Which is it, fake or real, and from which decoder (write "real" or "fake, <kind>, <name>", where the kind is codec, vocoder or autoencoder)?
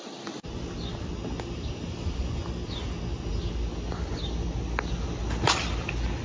real